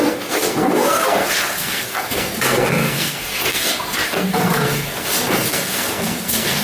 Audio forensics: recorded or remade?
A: remade